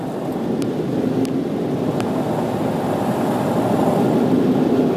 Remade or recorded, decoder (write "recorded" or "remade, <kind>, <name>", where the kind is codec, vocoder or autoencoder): recorded